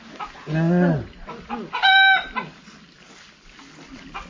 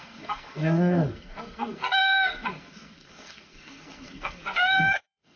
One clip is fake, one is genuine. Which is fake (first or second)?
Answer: second